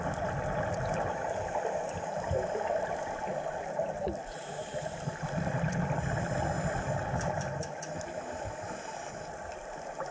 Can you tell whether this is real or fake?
real